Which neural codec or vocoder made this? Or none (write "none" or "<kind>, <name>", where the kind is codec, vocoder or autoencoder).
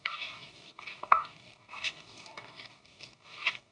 codec, DAC